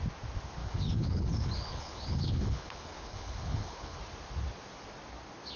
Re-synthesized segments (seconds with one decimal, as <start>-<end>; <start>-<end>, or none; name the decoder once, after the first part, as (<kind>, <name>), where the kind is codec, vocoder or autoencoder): 0.6-4.0 (codec, HILCodec)